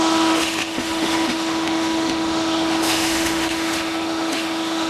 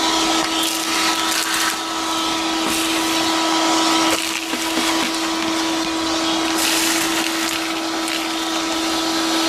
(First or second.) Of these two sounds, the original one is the second